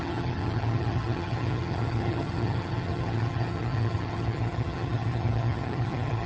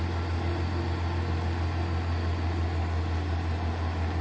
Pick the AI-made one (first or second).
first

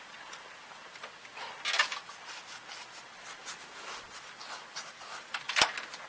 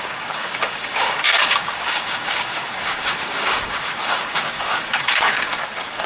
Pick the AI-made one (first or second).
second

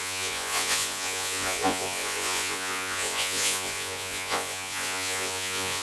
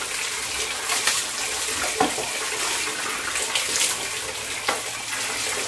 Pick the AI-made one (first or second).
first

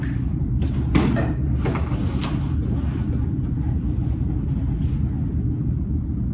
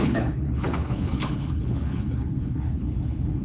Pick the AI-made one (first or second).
second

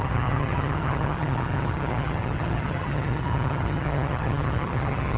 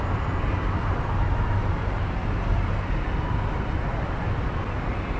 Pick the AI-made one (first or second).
first